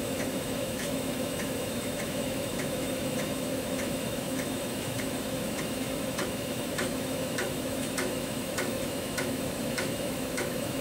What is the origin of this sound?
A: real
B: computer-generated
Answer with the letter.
B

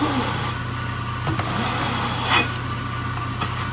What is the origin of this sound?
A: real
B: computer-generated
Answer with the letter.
A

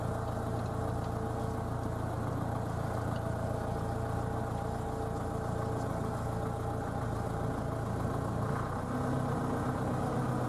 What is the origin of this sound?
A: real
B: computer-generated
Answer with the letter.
A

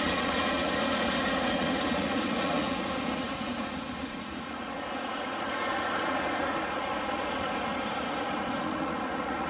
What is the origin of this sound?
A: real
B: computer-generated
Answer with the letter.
B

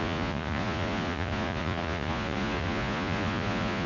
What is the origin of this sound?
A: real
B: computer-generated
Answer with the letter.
B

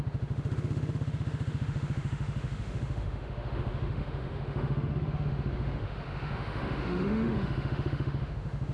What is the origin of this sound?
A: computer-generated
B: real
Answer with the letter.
A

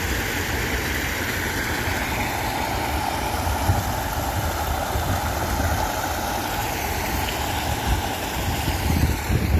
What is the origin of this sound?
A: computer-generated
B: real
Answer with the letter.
B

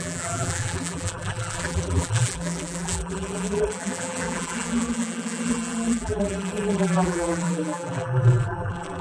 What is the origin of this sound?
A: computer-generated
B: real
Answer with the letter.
A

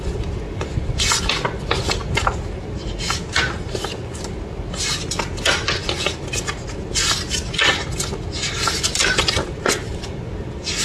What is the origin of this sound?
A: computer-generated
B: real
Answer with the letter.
B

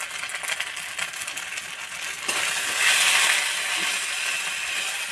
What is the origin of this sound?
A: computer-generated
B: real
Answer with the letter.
B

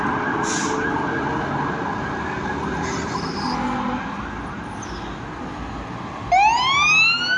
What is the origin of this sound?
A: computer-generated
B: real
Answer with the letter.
B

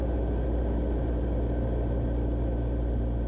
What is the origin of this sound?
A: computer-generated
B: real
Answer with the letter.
B